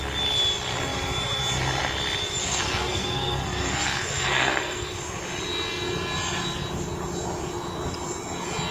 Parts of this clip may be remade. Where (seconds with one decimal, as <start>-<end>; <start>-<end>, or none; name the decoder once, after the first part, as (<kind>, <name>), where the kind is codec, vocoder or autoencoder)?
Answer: 2.4-4.9 (codec, SNAC)

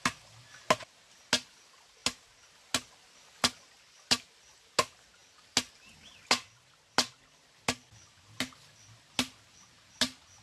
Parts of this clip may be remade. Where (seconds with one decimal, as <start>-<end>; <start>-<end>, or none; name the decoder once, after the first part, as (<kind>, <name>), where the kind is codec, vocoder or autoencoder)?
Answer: none

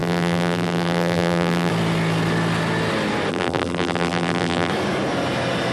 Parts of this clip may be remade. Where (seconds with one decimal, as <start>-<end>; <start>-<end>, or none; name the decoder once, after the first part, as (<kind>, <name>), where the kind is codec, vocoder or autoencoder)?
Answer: 0.0-1.7 (vocoder, BigVGAN v2); 3.3-4.7

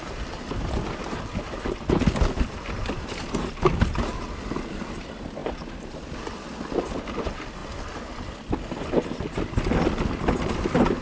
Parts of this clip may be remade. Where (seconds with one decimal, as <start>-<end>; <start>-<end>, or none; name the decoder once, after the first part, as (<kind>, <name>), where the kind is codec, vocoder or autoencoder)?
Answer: none

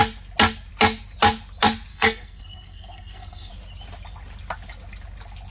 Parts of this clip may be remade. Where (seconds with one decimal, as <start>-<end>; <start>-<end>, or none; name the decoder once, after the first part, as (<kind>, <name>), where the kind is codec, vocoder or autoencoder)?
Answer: 1.9-3.5 (codec, SNAC)

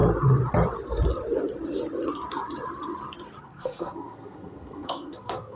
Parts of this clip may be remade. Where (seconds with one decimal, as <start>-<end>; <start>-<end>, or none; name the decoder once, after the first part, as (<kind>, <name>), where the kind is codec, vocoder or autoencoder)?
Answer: 3.4-5.6 (codec, SNAC)

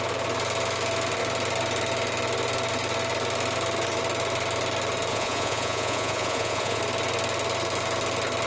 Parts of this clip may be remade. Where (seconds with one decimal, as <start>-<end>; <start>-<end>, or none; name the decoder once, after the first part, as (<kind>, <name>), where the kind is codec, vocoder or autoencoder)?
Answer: 5.1-6.8 (vocoder, Vocos)

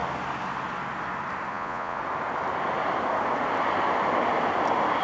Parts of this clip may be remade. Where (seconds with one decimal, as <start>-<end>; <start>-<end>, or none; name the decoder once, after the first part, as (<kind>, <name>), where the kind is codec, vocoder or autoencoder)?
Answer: 1.5-2.0 (vocoder, Vocos)